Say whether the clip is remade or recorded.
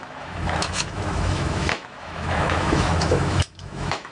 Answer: remade